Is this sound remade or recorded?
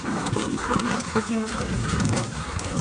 remade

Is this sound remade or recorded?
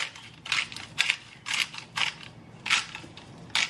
recorded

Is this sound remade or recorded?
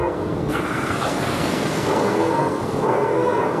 remade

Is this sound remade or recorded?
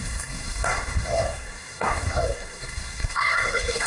remade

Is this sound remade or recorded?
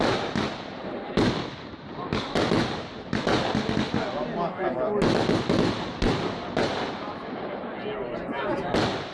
recorded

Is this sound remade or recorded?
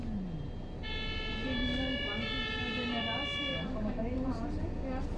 recorded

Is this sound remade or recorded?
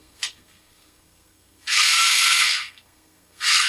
remade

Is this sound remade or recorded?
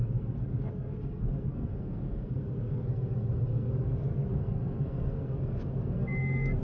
remade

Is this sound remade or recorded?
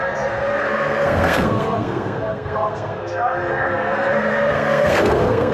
remade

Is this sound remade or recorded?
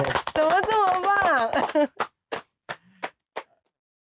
recorded